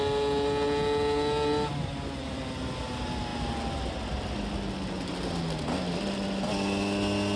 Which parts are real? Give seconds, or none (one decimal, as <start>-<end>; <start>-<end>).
0.0-7.4